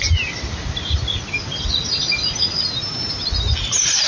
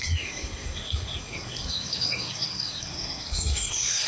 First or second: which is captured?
first